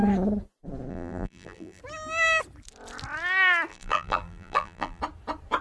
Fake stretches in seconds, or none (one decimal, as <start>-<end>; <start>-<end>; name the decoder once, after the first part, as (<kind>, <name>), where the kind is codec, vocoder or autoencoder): 0.9-1.8 (vocoder, BigVGAN v2); 3.7-5.0